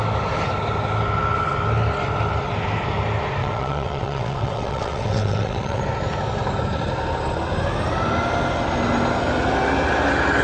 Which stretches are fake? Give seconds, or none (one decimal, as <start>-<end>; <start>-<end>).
3.4-5.8